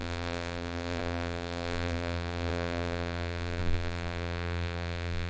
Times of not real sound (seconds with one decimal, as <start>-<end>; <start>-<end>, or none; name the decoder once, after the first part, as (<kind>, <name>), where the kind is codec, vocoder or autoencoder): 0.0-5.3 (vocoder, BigVGAN v2)